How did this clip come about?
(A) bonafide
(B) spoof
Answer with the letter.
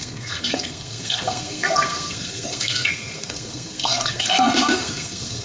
B